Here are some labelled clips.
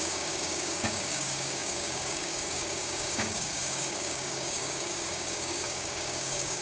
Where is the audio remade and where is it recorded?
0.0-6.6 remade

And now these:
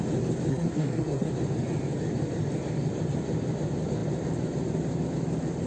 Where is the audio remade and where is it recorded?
0.0-0.5 recorded; 0.5-1.3 remade; 1.3-5.7 recorded

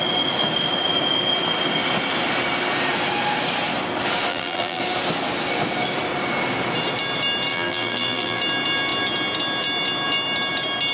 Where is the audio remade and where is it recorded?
0.0-4.3 recorded; 4.3-4.8 remade; 4.8-7.5 recorded; 7.5-8.4 remade; 8.4-10.9 recorded

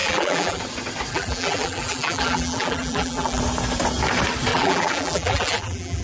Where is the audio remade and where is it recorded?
0.0-0.6 remade; 0.6-1.1 recorded; 1.1-3.4 remade; 3.4-4.5 recorded; 4.5-6.0 remade

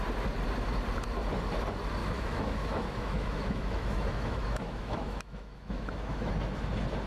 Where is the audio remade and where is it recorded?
0.0-2.0 recorded; 2.0-6.3 remade; 6.3-7.1 recorded

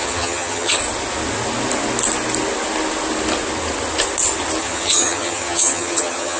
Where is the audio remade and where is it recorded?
0.0-0.8 remade; 0.8-4.6 recorded; 4.6-6.4 remade